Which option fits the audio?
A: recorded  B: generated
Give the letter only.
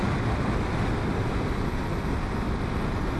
A